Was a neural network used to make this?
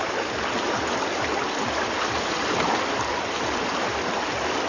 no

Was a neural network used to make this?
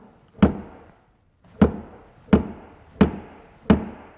no